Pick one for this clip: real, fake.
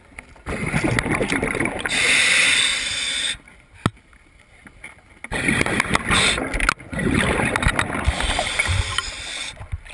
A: real